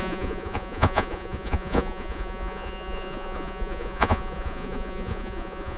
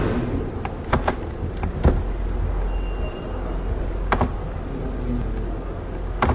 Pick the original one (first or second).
second